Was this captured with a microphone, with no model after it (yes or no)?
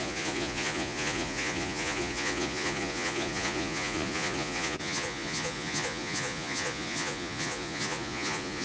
no